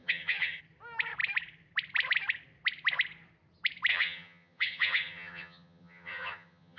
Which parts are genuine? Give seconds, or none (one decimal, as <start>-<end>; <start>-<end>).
0.6-3.9